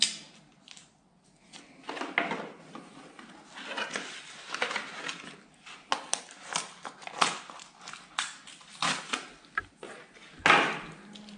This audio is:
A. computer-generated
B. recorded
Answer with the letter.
B